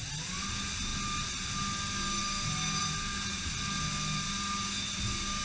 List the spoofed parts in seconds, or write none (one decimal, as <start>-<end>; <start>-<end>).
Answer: none